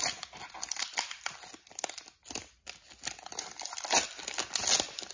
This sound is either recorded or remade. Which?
recorded